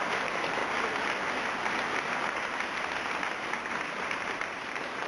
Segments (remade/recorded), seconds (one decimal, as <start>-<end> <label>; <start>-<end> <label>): 0.0-0.6 remade; 0.6-3.7 recorded; 3.7-5.1 remade